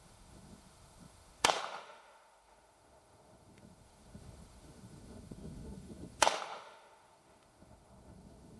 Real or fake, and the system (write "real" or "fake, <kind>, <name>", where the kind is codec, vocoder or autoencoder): fake, autoencoder, DAC-VAE